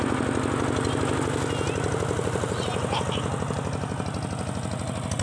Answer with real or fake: real